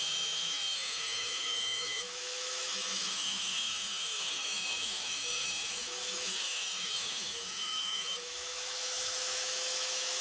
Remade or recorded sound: remade